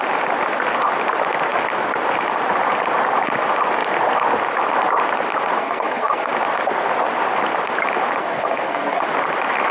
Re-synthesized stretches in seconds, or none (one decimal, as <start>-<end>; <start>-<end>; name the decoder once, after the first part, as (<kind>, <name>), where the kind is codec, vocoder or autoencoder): 5.6-6.3 (codec, SNAC); 8.2-9.0